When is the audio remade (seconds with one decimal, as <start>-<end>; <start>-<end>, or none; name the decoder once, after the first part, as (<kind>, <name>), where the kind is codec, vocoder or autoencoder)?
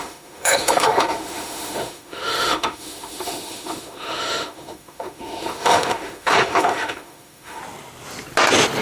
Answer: 0.0-7.6 (autoencoder, DAC-VAE)